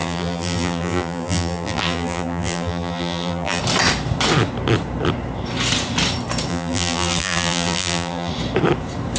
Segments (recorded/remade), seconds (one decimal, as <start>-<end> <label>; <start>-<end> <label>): 0.0-3.6 remade; 3.6-6.5 recorded; 6.5-8.3 remade; 8.3-9.2 recorded